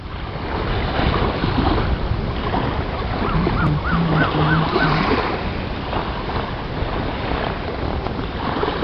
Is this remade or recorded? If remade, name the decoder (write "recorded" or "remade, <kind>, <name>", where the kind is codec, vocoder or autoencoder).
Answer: recorded